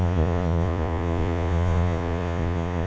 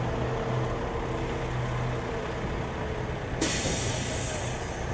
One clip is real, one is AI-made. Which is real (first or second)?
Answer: second